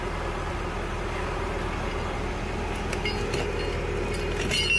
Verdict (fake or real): real